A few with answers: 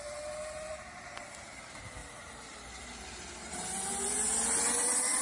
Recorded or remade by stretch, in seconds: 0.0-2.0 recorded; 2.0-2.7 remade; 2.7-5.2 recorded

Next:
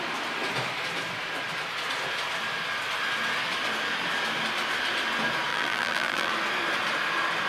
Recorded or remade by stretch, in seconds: 0.0-5.5 recorded; 5.5-6.3 remade; 6.3-7.5 recorded